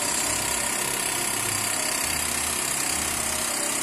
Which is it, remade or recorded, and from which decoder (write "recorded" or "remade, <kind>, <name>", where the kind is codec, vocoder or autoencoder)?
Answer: recorded